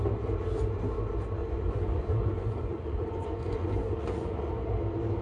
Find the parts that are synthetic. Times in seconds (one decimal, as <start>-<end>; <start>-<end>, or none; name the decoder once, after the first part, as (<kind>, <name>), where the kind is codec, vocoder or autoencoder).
1.4-4.5 (vocoder, Vocos)